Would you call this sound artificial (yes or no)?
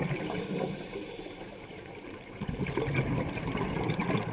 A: no